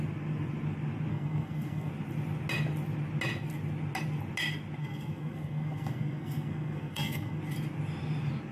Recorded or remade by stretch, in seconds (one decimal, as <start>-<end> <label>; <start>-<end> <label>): 0.0-1.1 recorded; 1.1-1.9 remade; 1.9-4.8 recorded; 4.8-7.4 remade; 7.4-8.5 recorded